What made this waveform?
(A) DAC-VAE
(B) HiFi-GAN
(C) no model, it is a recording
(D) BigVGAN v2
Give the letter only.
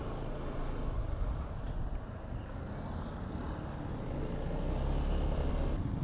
C